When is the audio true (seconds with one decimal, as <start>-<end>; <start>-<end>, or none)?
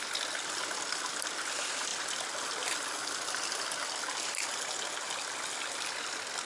0.0-6.5